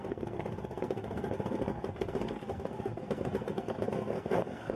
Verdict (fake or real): fake